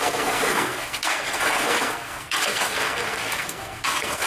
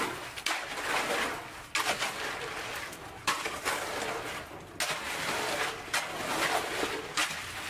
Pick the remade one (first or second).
first